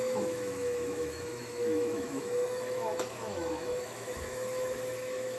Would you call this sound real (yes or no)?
no